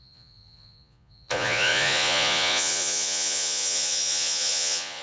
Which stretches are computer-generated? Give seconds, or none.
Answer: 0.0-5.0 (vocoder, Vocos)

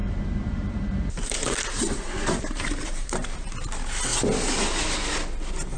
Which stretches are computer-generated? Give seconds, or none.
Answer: 0.0-3.5 (vocoder, BigVGAN v2)

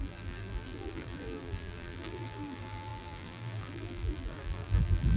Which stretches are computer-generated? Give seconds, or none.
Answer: 0.0-5.2 (vocoder, BigVGAN v2)

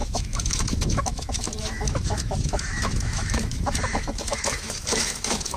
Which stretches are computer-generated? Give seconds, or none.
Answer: 0.0-5.6 (autoencoder, DAC-VAE)

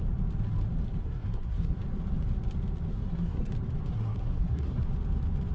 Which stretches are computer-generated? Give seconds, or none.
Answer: 1.0-1.8 (codec, SNAC); 2.9-3.5; 3.9-4.8

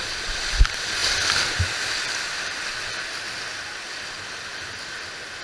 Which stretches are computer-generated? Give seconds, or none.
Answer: none

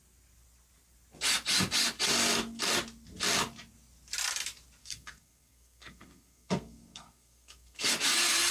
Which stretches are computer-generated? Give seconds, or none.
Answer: 4.8-7.9 (codec, SNAC)